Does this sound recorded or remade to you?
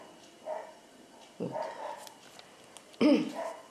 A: recorded